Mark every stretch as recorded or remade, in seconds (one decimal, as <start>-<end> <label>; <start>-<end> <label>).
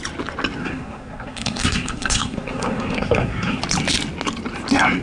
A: 0.0-0.6 recorded; 0.6-3.6 remade; 3.6-5.0 recorded